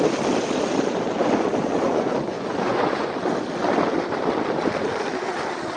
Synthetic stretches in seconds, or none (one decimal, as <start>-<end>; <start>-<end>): 1.7-3.1

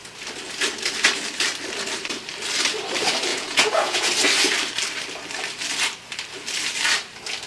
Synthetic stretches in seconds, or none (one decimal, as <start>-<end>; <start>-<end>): 3.3-4.1